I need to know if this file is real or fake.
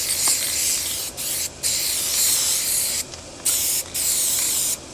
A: real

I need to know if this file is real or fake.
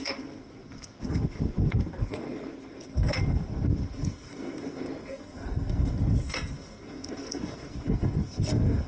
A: fake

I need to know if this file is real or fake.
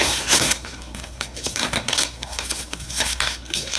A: fake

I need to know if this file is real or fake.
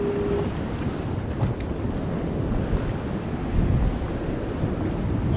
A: real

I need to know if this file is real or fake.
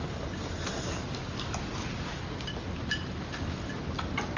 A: real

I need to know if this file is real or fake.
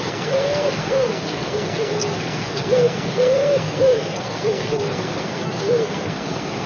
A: fake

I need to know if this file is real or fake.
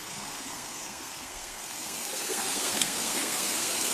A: fake